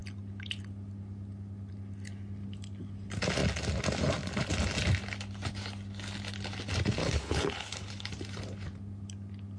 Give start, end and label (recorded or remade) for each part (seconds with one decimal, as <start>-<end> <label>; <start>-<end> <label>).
0.0-7.0 recorded; 7.0-8.1 remade; 8.1-9.6 recorded

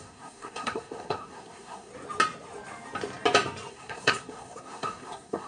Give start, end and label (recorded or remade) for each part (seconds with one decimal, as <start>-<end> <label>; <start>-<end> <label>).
0.0-1.9 remade; 1.9-3.7 recorded; 3.7-5.5 remade

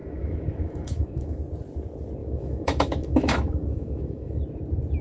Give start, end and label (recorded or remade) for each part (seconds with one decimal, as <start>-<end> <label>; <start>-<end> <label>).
0.0-1.4 remade; 1.4-2.2 recorded; 2.2-4.4 remade; 4.4-5.0 recorded